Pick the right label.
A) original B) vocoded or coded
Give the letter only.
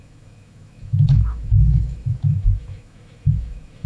B